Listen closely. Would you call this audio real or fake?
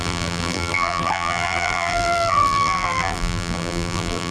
fake